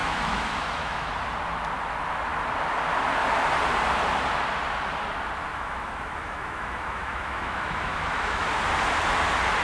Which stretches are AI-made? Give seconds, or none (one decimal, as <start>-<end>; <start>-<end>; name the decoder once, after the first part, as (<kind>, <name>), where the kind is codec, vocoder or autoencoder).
0.0-1.1 (autoencoder, DAC-VAE); 5.5-8.5